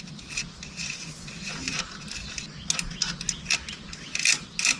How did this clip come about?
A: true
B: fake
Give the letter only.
A